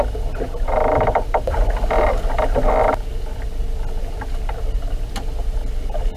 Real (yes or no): yes